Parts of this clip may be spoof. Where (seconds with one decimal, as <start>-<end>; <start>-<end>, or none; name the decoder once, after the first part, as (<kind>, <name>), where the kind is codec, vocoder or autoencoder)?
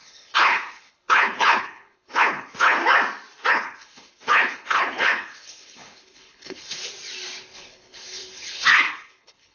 0.0-2.8 (codec, HILCodec); 3.5-6.8; 7.4-9.5